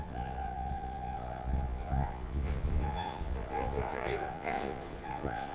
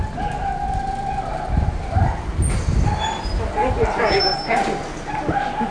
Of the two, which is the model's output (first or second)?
first